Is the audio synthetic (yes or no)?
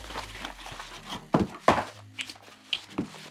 no